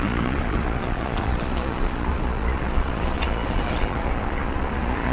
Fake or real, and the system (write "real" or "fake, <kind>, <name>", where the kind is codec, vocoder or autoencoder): fake, vocoder, Vocos